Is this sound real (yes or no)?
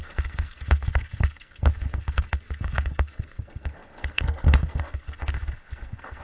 no